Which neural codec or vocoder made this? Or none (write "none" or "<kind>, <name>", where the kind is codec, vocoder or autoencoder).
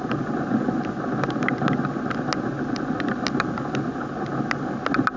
none